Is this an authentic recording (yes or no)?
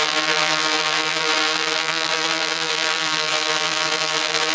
no